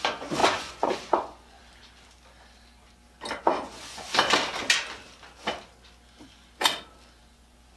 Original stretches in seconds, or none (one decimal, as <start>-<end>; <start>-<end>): 1.6-3.4; 4.1-7.2